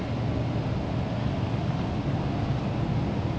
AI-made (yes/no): no